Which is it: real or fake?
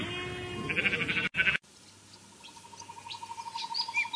real